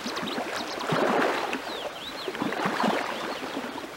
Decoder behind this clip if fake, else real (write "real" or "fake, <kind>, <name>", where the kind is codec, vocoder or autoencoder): fake, vocoder, BigVGAN v2